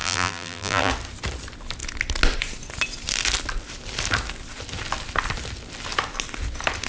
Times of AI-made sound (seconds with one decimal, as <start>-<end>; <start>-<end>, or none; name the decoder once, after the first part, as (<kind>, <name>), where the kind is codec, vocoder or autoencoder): 0.0-0.9 (vocoder, BigVGAN v2)